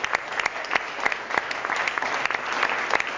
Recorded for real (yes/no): yes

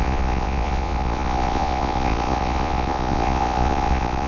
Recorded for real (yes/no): no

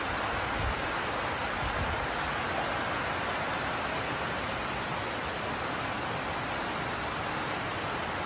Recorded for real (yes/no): yes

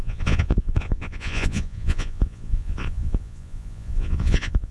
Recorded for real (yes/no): no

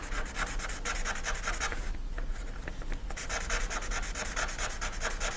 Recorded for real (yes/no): yes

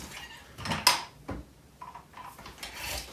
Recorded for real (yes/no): yes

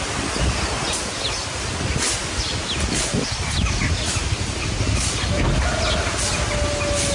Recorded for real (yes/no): yes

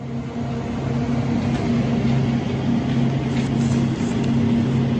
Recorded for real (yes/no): yes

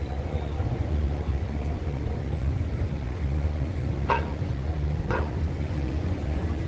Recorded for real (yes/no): no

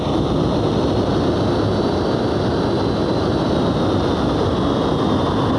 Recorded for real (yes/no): yes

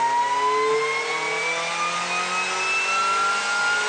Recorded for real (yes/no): yes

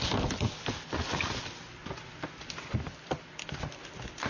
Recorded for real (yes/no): yes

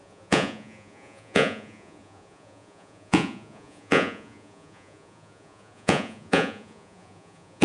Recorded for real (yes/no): no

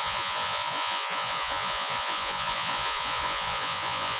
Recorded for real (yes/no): no